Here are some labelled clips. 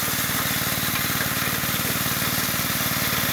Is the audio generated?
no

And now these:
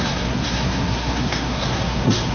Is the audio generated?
yes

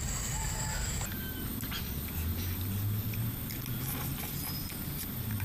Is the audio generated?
no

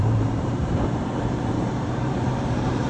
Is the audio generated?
yes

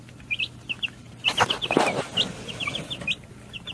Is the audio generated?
no